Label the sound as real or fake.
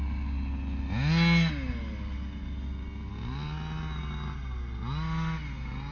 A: real